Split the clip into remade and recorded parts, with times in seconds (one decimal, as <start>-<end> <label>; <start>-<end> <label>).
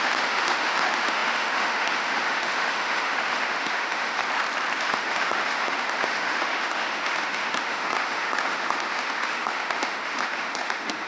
0.0-4.2 remade; 4.2-4.8 recorded; 4.8-11.1 remade